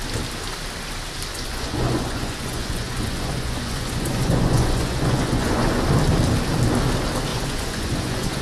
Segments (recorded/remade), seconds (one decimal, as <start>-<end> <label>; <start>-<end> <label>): 0.0-1.3 recorded; 1.3-5.8 remade; 5.8-7.3 recorded; 7.3-8.4 remade